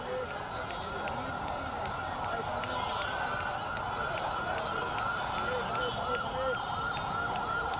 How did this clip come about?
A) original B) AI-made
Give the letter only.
A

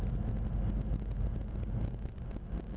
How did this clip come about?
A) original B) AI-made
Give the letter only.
A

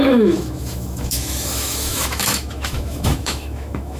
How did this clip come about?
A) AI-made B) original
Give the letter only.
A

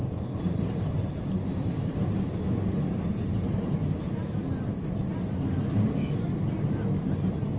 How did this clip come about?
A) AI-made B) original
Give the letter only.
B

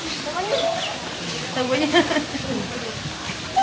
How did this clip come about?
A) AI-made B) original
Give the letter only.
B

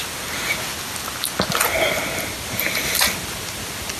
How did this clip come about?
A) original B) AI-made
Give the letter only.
A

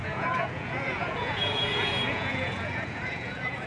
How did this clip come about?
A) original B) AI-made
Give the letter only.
B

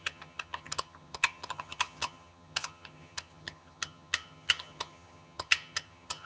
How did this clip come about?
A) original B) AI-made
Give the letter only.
B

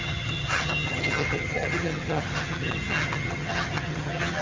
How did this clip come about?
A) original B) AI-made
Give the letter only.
B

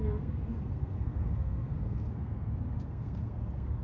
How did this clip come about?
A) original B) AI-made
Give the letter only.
B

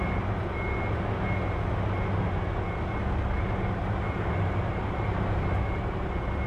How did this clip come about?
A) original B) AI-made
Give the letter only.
A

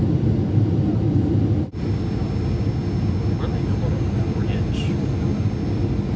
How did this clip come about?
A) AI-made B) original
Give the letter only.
B